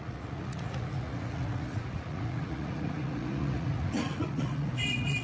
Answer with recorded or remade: remade